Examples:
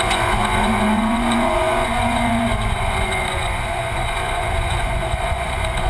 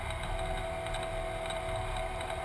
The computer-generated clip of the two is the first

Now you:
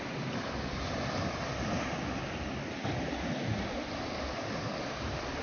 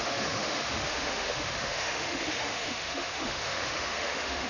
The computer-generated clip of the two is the second